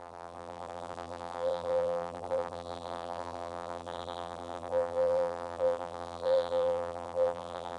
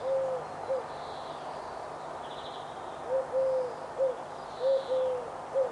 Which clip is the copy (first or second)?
first